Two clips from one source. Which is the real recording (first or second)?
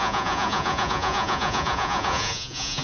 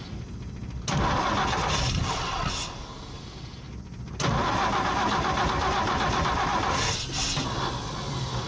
second